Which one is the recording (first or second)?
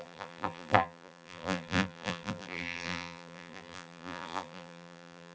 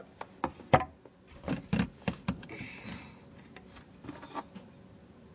second